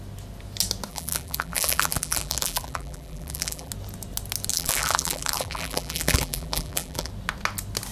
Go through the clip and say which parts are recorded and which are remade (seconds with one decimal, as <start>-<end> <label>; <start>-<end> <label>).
0.0-0.9 recorded; 0.9-3.7 remade; 3.7-4.5 recorded; 4.5-7.1 remade; 7.1-7.9 recorded